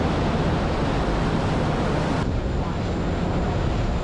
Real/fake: real